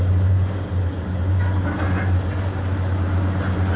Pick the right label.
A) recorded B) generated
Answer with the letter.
A